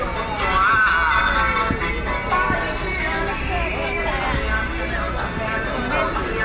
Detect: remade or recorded recorded